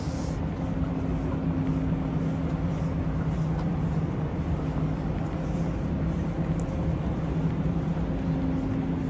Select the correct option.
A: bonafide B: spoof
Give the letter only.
A